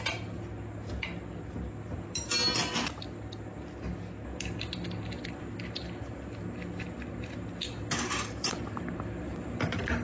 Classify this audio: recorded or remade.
recorded